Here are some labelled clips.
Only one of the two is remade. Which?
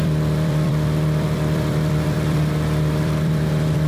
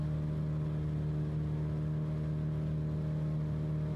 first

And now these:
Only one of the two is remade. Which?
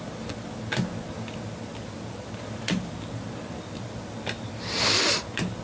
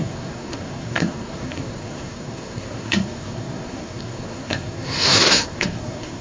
second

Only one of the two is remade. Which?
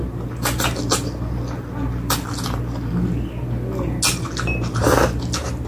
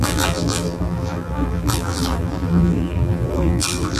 second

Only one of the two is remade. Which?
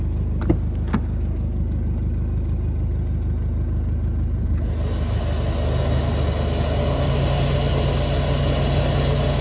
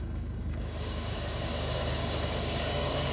second